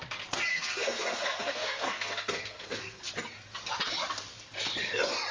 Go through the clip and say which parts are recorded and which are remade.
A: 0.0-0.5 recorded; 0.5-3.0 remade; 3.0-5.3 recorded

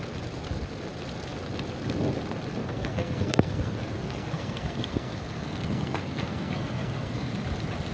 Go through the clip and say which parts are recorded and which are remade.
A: 0.0-2.6 recorded; 2.6-7.3 remade; 7.3-7.9 recorded

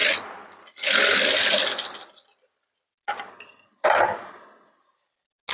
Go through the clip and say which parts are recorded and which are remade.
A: 0.0-5.5 recorded

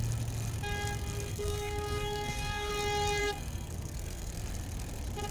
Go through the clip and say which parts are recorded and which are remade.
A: 0.0-1.3 recorded; 1.3-2.7 remade; 2.7-3.2 recorded; 3.2-4.3 remade; 4.3-5.3 recorded

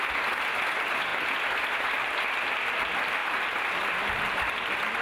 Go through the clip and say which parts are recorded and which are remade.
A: 0.0-5.0 recorded